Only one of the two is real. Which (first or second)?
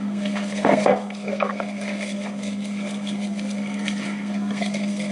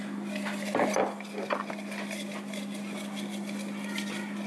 second